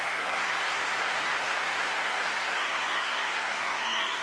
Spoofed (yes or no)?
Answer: yes